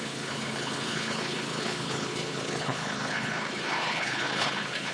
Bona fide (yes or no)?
no